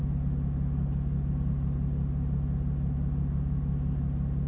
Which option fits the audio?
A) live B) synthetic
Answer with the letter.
A